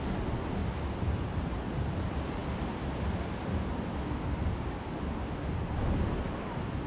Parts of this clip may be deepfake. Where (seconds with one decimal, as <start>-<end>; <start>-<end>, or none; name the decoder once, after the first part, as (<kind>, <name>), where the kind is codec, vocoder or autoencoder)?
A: none